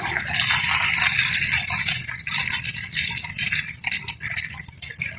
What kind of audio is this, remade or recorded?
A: recorded